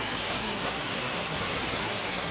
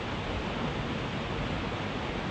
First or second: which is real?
second